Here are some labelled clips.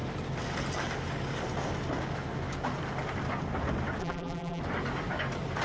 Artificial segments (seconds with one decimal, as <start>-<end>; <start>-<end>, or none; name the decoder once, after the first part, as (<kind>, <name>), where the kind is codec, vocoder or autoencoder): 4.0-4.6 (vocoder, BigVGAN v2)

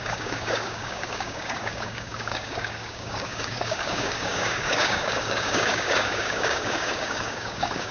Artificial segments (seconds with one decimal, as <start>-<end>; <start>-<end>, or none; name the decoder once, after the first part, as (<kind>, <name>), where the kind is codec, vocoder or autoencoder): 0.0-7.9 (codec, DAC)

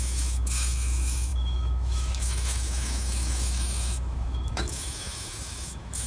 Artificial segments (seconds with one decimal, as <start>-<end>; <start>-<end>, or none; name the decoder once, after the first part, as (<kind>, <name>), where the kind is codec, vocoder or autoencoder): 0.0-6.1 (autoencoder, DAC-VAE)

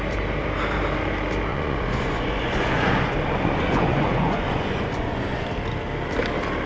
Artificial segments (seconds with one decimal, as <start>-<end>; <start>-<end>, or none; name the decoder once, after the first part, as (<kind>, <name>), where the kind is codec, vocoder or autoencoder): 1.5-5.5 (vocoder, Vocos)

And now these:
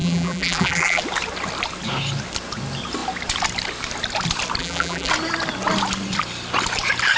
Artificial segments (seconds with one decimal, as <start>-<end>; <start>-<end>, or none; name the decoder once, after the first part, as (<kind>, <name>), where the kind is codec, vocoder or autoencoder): 0.0-1.0 (vocoder, BigVGAN v2); 4.6-5.1

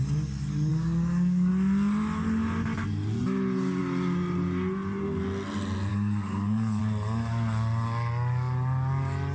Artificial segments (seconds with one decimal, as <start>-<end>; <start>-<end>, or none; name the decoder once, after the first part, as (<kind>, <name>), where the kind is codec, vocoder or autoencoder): 0.7-1.5 (codec, DAC); 5.9-6.8

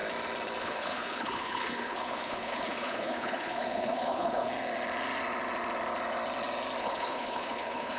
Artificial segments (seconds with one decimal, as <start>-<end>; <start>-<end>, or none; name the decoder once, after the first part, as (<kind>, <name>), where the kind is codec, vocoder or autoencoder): 0.6-4.5 (codec, HILCodec); 6.8-8.0

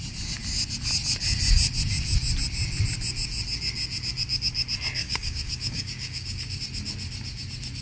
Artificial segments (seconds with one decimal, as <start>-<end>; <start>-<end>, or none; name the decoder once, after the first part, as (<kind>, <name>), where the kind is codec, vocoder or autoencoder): 5.0-6.6 (codec, DAC)